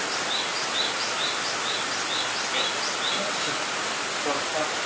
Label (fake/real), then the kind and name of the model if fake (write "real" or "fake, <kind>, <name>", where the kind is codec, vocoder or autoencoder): real